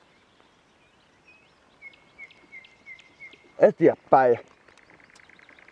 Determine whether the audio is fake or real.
real